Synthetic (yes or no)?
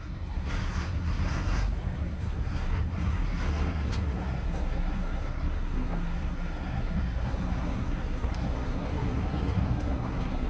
yes